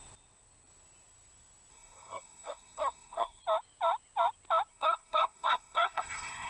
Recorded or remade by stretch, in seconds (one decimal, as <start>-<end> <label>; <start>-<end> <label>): 0.0-1.7 recorded; 1.7-3.4 remade; 3.4-4.7 recorded; 4.7-6.5 remade